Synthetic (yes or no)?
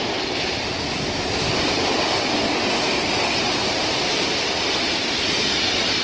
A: no